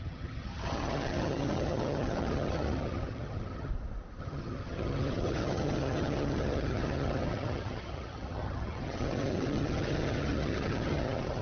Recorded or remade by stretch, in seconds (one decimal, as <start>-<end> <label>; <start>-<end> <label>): 0.0-3.7 remade; 3.7-4.2 recorded; 4.2-11.4 remade